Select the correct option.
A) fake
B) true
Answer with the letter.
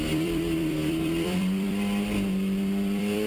A